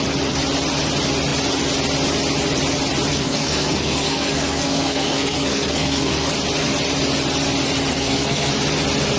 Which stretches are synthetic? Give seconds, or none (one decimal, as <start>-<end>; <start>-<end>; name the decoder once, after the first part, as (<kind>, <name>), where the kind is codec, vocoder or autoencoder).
3.1-6.3 (codec, SNAC); 7.9-8.5